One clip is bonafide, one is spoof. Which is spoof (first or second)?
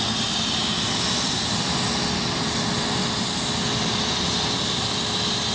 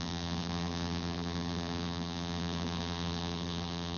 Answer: second